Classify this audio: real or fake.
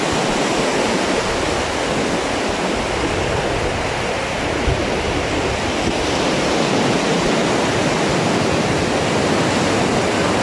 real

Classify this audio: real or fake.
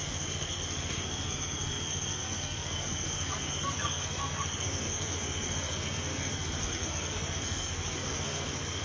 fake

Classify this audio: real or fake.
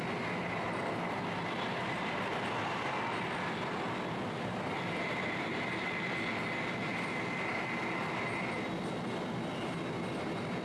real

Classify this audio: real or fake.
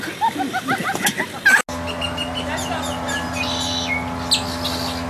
real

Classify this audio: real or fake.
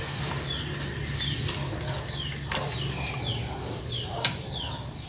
fake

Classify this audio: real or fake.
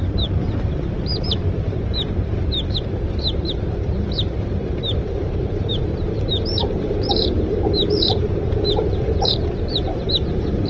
fake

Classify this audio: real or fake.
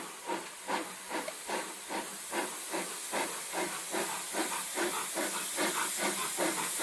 real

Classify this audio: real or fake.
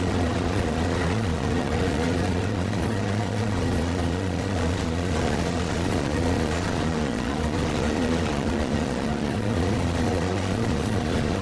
fake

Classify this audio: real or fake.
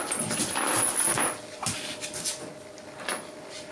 real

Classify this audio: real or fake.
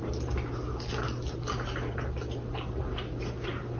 real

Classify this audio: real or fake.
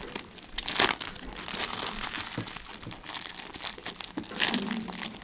real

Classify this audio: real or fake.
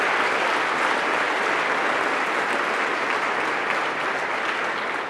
real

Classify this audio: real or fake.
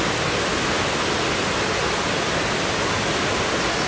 real